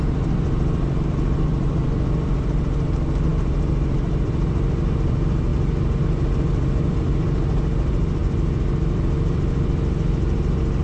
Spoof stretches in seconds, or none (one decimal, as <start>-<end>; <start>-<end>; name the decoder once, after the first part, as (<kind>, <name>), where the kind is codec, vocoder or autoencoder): 0.0-3.3 (vocoder, BigVGAN v2); 4.0-5.5; 6.0-8.2; 8.8-10.8